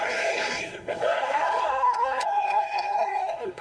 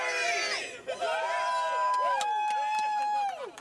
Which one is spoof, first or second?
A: first